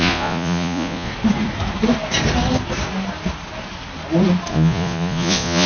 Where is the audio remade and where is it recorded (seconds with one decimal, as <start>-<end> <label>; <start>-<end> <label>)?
0.0-1.1 remade; 1.1-4.5 recorded; 4.5-5.7 remade